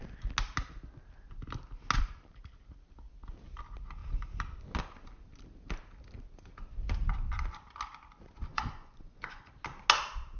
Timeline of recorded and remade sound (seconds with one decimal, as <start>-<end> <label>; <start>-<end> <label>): 0.0-8.5 recorded; 8.5-9.5 remade; 9.5-10.4 recorded